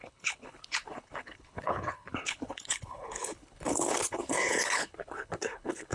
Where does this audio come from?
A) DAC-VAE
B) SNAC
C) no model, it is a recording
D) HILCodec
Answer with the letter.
D